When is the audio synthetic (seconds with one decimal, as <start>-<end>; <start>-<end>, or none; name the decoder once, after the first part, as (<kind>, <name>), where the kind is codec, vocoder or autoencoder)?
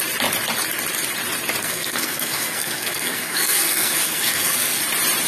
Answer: 1.6-4.8 (codec, SNAC)